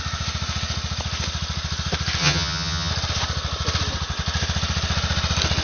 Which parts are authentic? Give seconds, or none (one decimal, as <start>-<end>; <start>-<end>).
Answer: 0.0-2.2; 2.9-5.6